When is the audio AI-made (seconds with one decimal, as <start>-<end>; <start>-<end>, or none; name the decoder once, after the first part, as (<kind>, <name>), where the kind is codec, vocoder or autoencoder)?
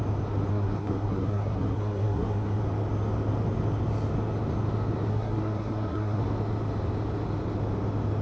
0.5-2.6 (codec, SNAC); 5.1-6.2